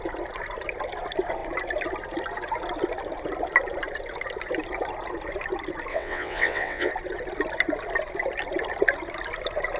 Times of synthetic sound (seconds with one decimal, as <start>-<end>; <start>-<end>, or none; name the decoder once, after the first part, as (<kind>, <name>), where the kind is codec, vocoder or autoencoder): 5.9-6.9 (vocoder, WaveNeXt)